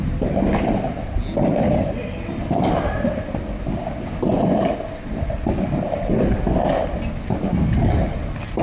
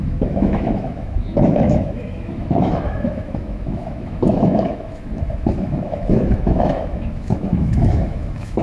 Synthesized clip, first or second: second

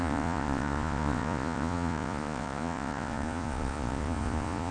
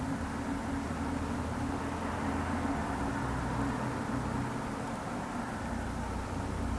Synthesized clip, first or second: first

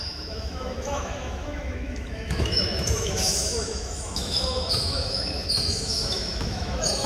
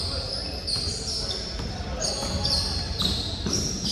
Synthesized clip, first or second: first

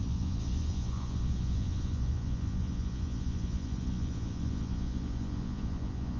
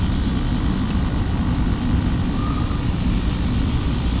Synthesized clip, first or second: first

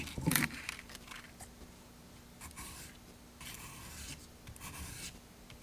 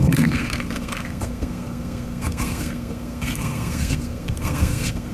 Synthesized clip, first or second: second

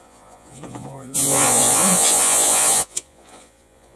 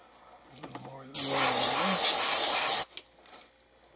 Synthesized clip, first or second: first